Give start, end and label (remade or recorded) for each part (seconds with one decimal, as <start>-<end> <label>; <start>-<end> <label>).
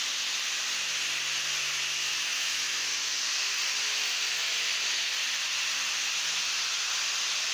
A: 0.0-2.1 recorded; 2.1-2.9 remade; 2.9-7.5 recorded